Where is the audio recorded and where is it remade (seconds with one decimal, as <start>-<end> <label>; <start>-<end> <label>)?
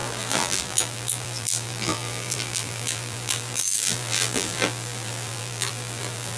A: 0.0-6.4 remade